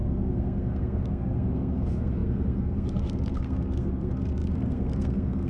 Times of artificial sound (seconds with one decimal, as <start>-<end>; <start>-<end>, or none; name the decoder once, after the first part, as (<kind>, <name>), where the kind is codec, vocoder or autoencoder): 0.0-5.5 (codec, SNAC)